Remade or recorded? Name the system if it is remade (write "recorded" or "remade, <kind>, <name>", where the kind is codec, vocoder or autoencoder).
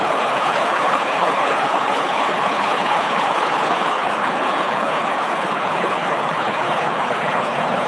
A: remade, codec, HILCodec